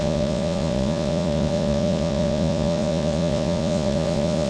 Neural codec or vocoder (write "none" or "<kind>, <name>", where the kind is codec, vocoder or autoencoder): vocoder, Vocos